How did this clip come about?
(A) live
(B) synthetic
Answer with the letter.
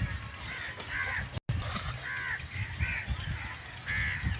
A